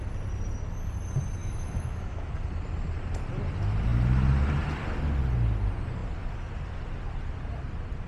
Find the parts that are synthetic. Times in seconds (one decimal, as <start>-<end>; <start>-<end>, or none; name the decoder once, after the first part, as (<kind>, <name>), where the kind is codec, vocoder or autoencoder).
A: 1.4-2.3 (autoencoder, DAC-VAE)